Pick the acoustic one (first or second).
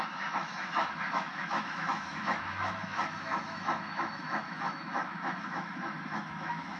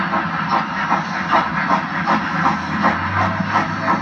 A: second